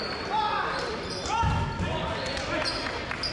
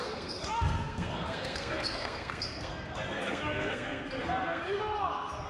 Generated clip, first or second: second